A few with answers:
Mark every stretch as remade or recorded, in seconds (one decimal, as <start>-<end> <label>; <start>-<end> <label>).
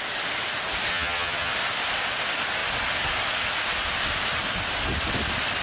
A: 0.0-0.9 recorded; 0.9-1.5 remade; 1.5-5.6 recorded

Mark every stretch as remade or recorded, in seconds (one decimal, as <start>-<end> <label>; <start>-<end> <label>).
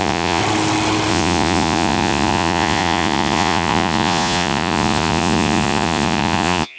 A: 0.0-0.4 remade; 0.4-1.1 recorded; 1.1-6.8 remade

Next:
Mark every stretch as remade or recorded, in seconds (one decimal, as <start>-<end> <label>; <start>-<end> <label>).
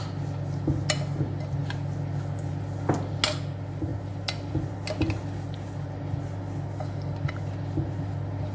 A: 0.0-8.5 recorded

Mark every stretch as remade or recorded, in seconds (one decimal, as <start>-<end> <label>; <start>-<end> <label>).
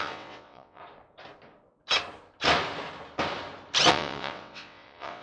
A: 0.0-0.8 remade; 0.8-3.9 recorded; 3.9-5.2 remade